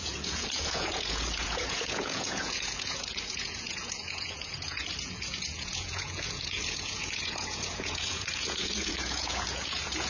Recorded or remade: remade